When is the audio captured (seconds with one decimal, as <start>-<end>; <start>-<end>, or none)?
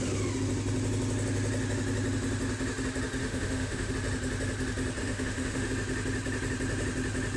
0.0-3.2; 3.9-5.0; 5.7-7.4